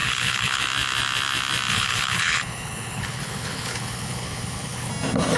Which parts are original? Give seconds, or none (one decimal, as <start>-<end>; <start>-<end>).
0.6-1.7; 4.9-5.4